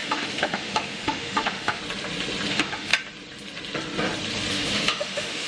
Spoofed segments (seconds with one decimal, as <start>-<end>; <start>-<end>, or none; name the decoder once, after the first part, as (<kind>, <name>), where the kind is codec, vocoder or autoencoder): 0.0-1.8 (autoencoder, DAC-VAE); 2.5-2.9; 4.5-5.5